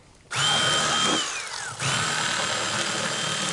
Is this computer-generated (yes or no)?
no